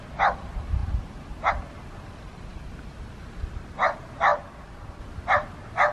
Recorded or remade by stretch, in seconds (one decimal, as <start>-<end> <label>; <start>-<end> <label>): 0.0-5.9 recorded